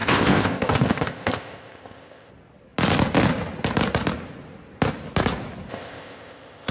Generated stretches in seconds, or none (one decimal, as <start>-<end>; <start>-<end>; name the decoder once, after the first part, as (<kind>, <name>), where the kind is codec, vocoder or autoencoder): 0.0-2.3 (codec, ZipCodec); 5.7-6.7